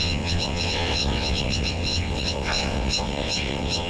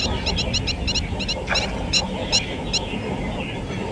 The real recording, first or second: second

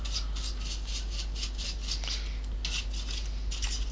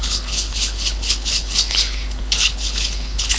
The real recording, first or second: first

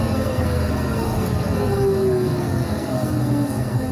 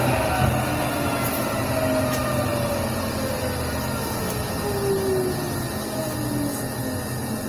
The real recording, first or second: second